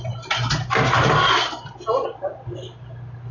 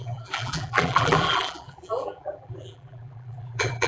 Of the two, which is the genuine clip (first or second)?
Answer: first